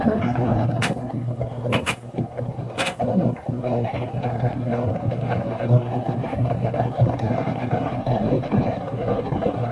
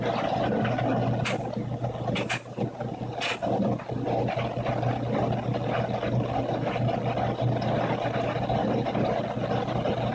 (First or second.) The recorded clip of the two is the second